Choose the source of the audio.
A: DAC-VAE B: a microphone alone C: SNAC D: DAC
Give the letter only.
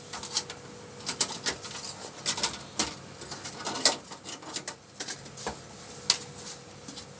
B